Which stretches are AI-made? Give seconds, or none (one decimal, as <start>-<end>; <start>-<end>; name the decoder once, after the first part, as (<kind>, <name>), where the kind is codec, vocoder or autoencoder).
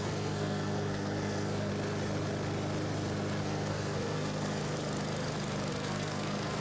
0.0-1.7 (codec, SNAC); 3.4-4.6; 5.7-6.6